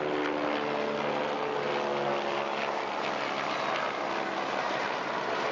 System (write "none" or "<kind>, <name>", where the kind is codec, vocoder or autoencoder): none